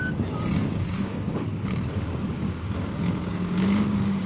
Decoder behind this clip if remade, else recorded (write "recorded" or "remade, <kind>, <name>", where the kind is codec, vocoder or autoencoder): remade, codec, DAC